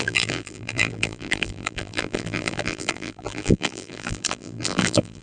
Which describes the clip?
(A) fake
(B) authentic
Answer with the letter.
A